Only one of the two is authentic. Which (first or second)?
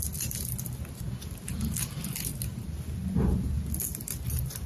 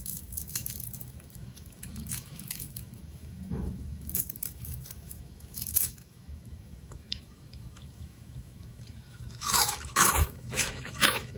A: first